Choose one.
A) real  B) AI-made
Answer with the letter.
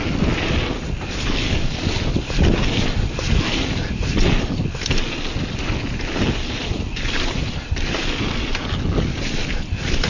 A